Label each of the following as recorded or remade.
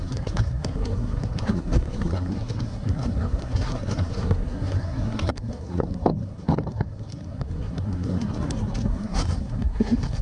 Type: remade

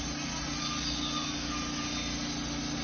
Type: recorded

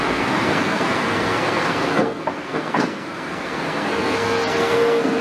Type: remade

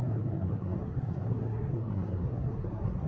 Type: remade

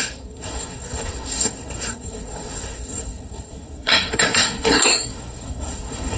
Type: remade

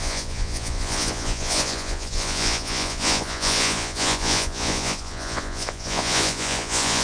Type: remade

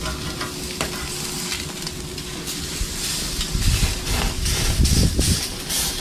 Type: recorded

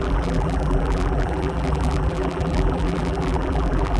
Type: remade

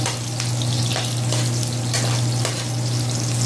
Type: recorded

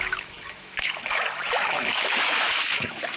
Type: remade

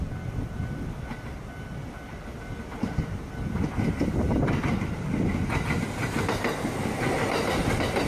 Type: recorded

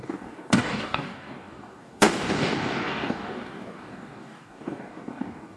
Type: remade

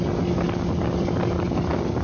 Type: recorded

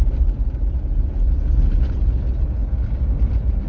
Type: recorded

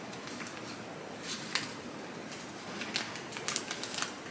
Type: recorded